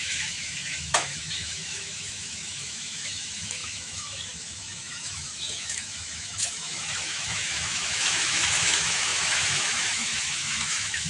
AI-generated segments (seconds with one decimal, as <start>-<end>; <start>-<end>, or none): 0.0-11.1